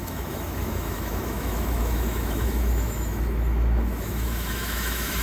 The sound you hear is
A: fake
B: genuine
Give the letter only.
A